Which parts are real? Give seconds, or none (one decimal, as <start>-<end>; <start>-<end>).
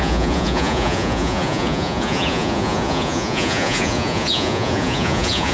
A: none